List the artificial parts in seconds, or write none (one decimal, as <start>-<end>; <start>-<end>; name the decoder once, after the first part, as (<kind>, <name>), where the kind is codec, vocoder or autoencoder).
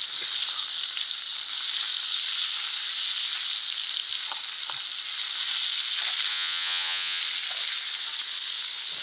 6.3-7.2 (vocoder, Vocos)